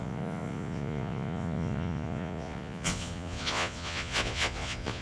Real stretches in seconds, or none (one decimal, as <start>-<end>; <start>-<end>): none